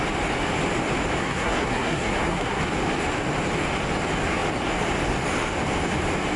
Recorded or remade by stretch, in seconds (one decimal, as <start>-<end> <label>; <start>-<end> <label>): 0.0-1.2 recorded; 1.2-2.6 remade; 2.6-6.4 recorded